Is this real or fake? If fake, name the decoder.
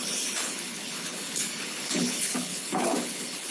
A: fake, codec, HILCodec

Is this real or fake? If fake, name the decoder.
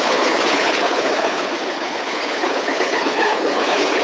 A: fake, codec, HILCodec